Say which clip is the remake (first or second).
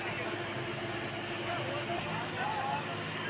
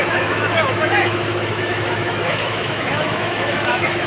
second